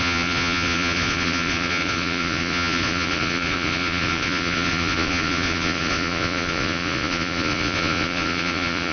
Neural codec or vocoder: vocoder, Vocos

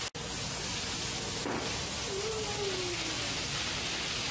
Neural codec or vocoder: none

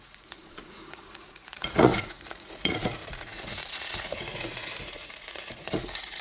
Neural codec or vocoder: vocoder, Vocos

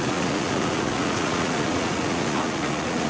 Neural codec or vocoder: vocoder, Vocos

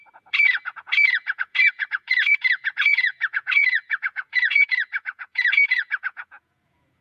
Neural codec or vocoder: vocoder, Vocos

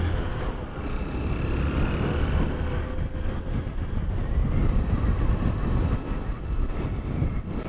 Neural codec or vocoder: none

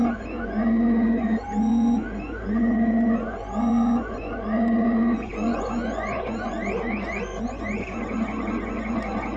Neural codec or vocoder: vocoder, Vocos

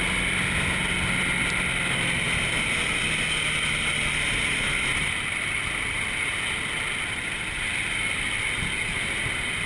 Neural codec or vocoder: none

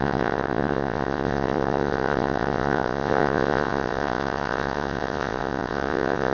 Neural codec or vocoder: vocoder, Vocos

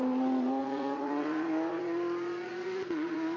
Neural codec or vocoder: vocoder, Vocos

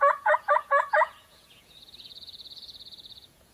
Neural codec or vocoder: vocoder, Vocos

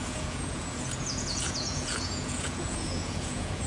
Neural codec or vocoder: vocoder, Vocos